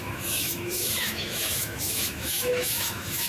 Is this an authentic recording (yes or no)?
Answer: no